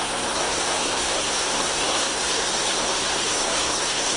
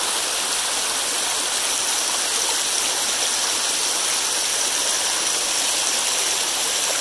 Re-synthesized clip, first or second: first